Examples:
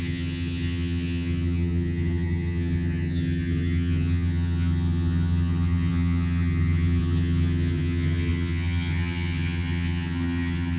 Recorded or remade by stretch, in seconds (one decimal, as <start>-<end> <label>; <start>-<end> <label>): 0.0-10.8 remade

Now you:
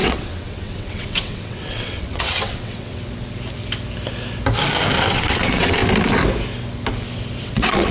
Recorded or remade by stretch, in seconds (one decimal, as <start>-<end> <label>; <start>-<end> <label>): 0.0-3.0 remade; 3.0-5.1 recorded; 5.1-5.8 remade; 5.8-7.4 recorded; 7.4-7.9 remade

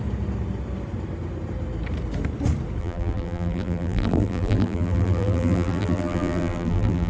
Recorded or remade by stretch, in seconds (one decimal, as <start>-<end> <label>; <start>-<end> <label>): 0.0-2.8 recorded; 2.8-7.1 remade

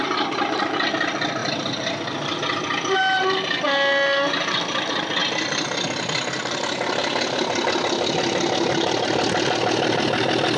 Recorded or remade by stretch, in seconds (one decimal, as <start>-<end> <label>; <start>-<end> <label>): 0.0-10.6 recorded

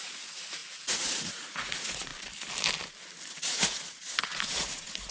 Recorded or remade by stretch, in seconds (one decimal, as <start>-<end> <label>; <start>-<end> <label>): 0.0-2.1 remade; 2.1-3.3 recorded; 3.3-5.1 remade

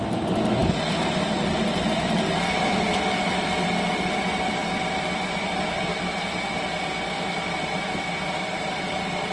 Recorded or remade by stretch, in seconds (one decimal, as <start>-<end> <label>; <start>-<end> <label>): 0.0-9.3 recorded

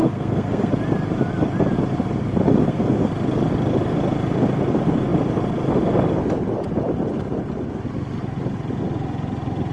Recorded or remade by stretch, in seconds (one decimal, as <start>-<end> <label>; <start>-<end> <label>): 0.0-0.7 remade; 0.7-2.6 recorded; 2.6-3.1 remade; 3.1-9.7 recorded

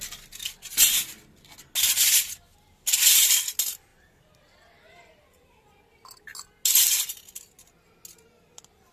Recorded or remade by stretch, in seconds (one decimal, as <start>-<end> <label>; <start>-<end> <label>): 0.0-8.9 recorded